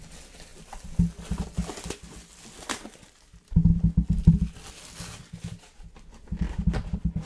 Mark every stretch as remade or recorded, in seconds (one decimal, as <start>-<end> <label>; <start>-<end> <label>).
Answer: 0.0-7.2 recorded